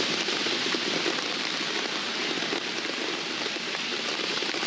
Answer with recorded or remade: recorded